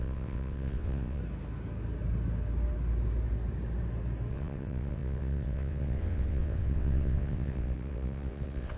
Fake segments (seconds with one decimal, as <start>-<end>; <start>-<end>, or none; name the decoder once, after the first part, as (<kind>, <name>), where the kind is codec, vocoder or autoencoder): 0.0-1.2 (vocoder, WaveNeXt); 4.3-8.8